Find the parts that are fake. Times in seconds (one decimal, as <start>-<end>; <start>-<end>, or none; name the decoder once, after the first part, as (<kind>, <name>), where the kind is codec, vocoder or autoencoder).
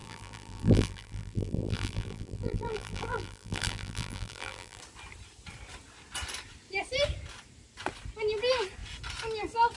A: 0.0-4.8 (vocoder, BigVGAN v2)